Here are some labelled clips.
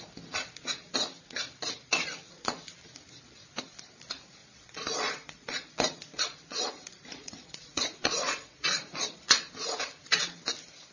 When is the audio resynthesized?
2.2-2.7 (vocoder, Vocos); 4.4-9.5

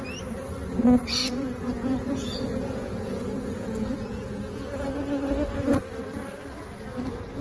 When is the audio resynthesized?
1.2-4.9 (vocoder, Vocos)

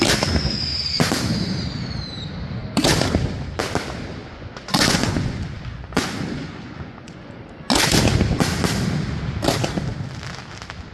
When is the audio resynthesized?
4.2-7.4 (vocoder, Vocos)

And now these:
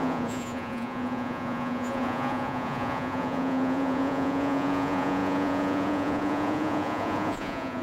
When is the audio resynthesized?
0.0-7.8 (vocoder, Vocos)

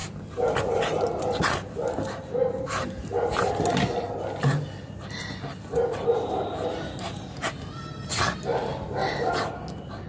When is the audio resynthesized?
none

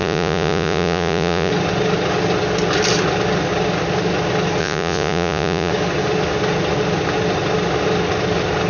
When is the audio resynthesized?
0.0-1.5 (vocoder, Vocos); 4.6-5.7

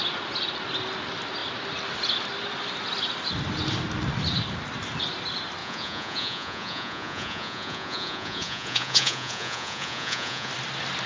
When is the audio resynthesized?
5.6-10.5 (vocoder, Vocos)

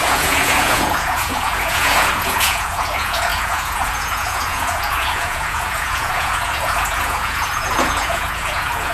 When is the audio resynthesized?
0.0-8.9 (vocoder, Vocos)